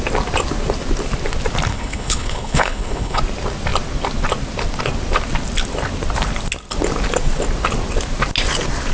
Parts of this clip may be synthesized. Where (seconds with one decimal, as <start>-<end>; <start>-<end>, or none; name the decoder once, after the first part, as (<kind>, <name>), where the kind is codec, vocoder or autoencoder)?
1.7-3.2 (codec, HILCodec)